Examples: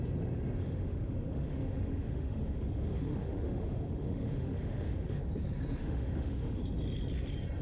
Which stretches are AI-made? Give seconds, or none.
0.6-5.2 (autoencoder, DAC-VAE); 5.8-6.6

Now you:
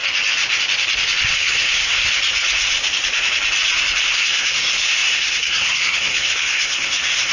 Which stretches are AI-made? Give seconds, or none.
1.3-2.0 (codec, SNAC); 4.1-7.3